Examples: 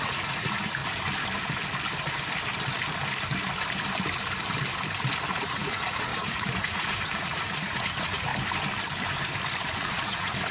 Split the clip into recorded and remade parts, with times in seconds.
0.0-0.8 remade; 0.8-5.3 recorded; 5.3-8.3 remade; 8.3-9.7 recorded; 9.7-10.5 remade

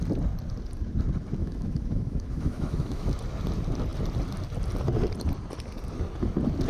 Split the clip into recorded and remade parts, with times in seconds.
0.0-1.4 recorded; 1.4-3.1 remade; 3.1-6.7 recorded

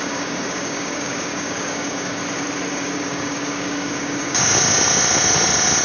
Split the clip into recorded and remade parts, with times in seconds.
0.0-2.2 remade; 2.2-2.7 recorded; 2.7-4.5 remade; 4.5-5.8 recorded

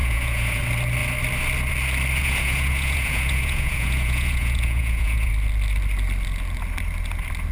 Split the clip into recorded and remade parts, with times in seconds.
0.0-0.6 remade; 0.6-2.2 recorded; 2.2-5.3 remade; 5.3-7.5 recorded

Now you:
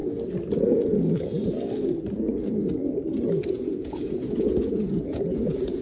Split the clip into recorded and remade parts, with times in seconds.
0.0-3.5 recorded; 3.5-5.8 remade

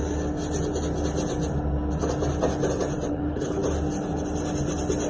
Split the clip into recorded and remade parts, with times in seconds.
0.0-3.1 recorded; 3.1-3.6 remade; 3.6-5.1 recorded

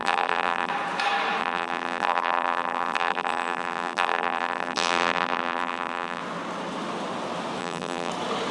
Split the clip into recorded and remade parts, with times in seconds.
0.0-0.7 remade; 0.7-1.4 recorded; 1.4-6.2 remade; 6.2-7.6 recorded; 7.6-8.1 remade; 8.1-8.5 recorded

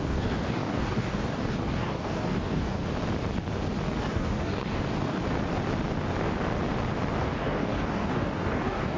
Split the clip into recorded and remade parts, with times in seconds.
0.0-2.8 remade; 2.8-4.0 recorded; 4.0-5.2 remade; 5.2-7.2 recorded; 7.2-9.0 remade